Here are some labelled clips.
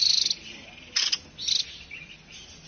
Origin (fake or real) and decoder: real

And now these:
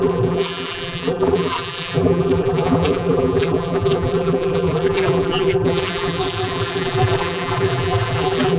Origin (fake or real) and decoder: fake, vocoder, BigVGAN v2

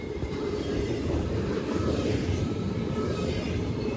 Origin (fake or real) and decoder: fake, vocoder, BigVGAN v2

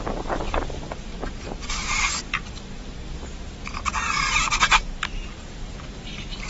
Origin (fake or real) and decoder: fake, vocoder, BigVGAN v2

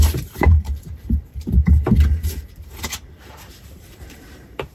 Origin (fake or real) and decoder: fake, vocoder, BigVGAN v2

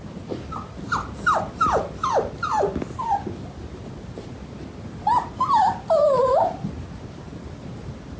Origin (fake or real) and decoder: real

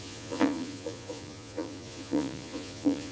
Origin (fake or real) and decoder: fake, vocoder, Vocos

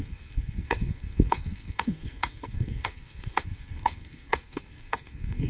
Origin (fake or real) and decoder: fake, codec, SNAC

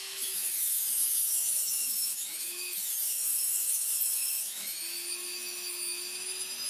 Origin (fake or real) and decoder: fake, autoencoder, DAC-VAE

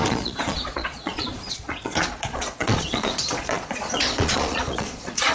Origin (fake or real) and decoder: fake, vocoder, Vocos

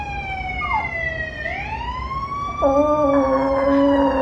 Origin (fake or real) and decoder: real